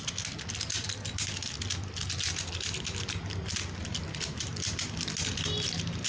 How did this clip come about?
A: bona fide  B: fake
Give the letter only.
A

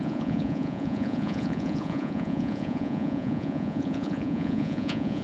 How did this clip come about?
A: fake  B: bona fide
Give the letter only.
A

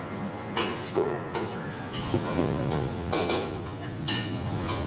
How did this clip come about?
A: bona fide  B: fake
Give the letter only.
B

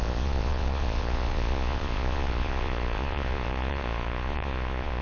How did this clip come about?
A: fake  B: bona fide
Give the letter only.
A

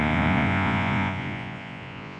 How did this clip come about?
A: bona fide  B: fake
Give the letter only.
B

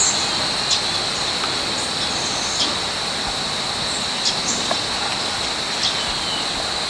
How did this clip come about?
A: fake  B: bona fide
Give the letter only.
B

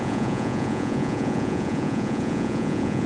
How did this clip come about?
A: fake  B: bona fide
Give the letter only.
A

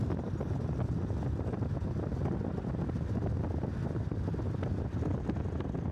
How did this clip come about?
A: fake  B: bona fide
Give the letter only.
B